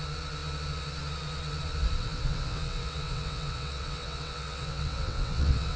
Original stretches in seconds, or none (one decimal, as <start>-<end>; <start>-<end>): 0.0-2.0